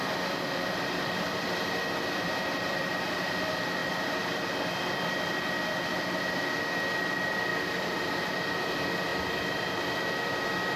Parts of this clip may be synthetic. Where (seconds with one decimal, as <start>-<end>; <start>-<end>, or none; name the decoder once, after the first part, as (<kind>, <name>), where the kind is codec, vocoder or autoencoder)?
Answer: 0.0-0.8 (vocoder, BigVGAN v2); 7.5-8.2; 9.1-10.4